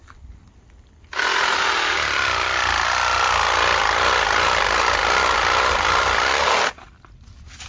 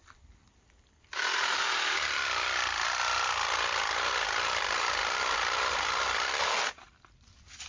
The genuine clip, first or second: first